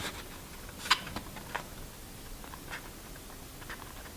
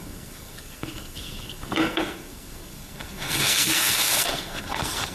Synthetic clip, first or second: second